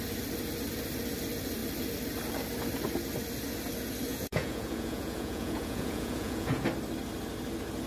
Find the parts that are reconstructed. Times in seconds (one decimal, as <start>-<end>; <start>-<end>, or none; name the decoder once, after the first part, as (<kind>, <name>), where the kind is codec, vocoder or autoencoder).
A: 4.1-6.6 (vocoder, Vocos)